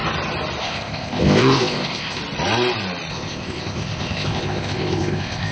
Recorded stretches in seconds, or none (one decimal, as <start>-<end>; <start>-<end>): 0.0-0.6; 2.2-3.1